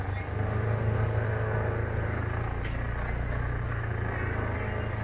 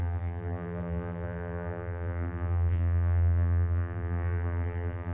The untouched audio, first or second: first